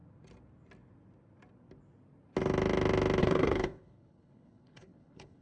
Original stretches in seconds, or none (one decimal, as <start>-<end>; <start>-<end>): 0.0-3.2

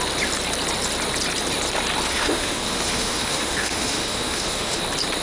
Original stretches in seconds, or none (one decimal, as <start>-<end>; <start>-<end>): 0.0-2.1; 4.8-5.2